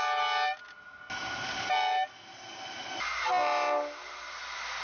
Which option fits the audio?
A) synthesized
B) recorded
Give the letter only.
B